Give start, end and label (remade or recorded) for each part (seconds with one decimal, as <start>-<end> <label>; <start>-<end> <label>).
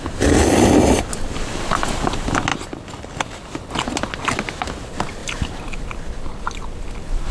0.0-7.3 recorded